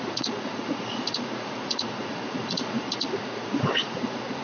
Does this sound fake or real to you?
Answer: fake